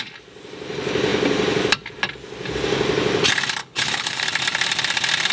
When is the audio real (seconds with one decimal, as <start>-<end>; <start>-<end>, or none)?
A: 0.0-3.6; 4.2-5.3

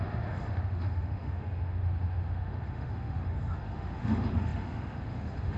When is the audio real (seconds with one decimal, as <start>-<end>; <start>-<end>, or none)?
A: none